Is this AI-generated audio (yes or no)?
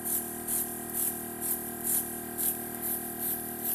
no